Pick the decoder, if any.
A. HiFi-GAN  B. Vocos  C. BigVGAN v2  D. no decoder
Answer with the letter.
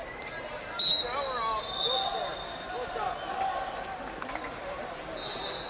D